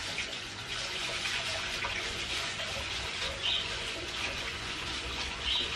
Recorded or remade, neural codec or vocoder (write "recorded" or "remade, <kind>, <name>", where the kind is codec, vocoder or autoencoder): remade, vocoder, Vocos